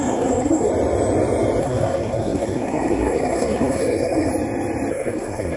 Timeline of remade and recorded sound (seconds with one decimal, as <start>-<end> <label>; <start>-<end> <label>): 0.0-0.7 remade; 0.7-1.6 recorded; 1.6-4.3 remade; 4.3-4.9 recorded; 4.9-5.6 remade